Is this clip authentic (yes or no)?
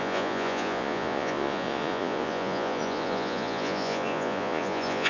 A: no